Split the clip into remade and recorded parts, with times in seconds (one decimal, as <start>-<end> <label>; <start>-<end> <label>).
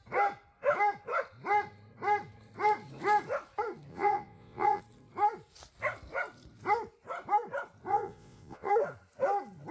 0.0-3.9 recorded; 3.9-4.8 remade; 4.8-7.9 recorded; 7.9-8.7 remade; 8.7-9.7 recorded